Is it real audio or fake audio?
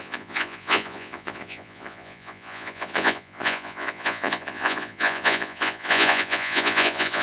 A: fake